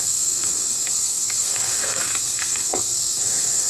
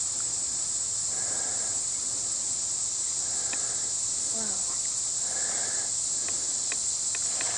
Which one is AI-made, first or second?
first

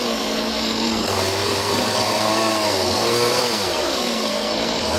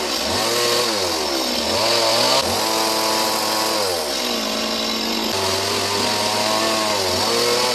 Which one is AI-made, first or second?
first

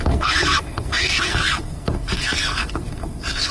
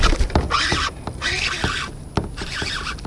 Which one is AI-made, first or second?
first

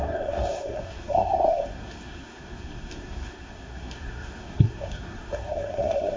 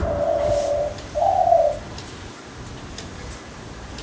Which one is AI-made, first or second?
first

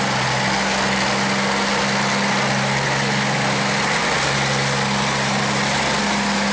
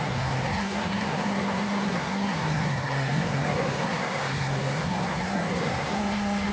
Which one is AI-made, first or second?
second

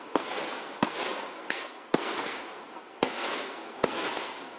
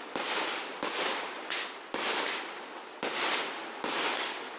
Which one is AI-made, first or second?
first